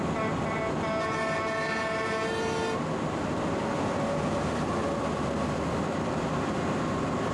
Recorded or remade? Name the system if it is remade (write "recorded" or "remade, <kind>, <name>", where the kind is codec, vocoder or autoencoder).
recorded